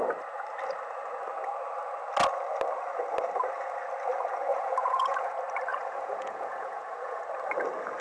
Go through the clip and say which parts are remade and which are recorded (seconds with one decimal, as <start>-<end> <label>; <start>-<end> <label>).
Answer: 0.0-4.5 recorded; 4.5-5.3 remade; 5.3-5.7 recorded; 5.7-7.2 remade; 7.2-8.0 recorded